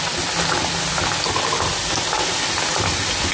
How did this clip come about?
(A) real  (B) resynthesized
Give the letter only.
A